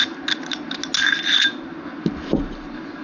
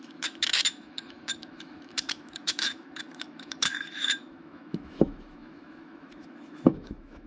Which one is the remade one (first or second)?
second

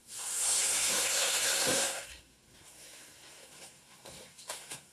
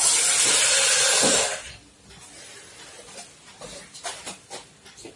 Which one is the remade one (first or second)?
first